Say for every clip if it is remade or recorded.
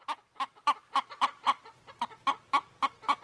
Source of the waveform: recorded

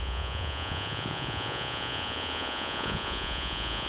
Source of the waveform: remade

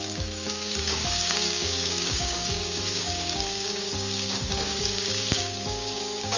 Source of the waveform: remade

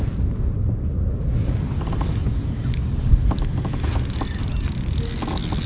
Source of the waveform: recorded